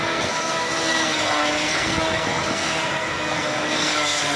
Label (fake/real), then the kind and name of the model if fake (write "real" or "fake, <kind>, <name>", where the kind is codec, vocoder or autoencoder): fake, codec, SNAC